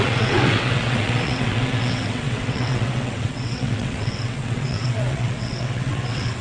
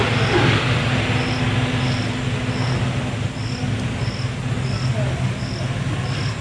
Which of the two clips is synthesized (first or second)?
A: first